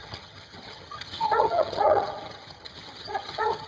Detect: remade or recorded remade